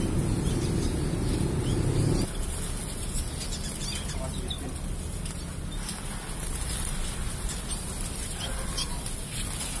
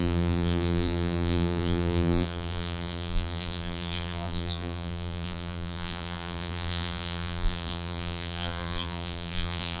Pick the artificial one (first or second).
second